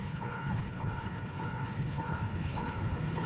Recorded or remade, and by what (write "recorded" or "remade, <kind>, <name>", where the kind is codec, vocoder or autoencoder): remade, codec, HILCodec